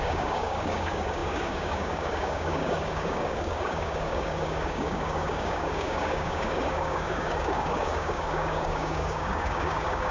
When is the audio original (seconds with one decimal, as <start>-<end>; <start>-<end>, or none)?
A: none